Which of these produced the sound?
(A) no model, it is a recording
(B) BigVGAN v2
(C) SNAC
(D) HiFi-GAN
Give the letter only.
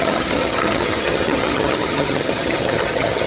D